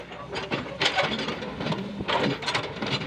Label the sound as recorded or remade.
recorded